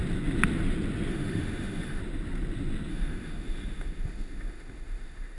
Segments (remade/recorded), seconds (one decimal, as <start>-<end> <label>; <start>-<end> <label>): 0.0-1.1 recorded; 1.1-2.0 remade; 2.0-2.9 recorded; 2.9-5.4 remade